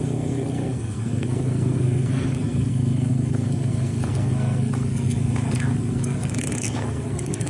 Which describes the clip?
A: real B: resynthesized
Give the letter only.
B